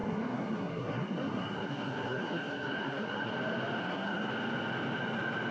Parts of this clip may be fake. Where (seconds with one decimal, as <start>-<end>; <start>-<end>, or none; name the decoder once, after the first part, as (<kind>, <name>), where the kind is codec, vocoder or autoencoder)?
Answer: 0.0-3.3 (codec, SNAC); 3.8-4.3